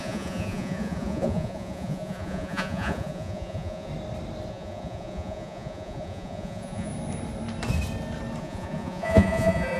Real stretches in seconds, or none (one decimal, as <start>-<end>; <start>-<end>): 3.9-4.5; 6.9-8.4